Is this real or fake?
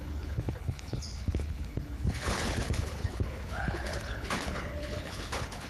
fake